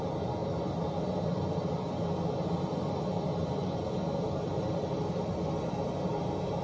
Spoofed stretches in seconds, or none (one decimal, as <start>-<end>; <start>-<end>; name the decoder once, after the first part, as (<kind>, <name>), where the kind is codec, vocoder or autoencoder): none